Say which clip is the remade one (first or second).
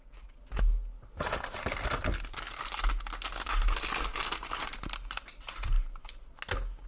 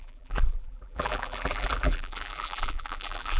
second